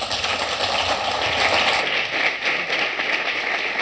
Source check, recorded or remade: recorded